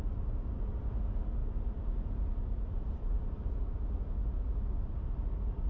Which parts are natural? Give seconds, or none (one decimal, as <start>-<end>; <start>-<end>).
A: 0.0-1.4; 3.5-5.7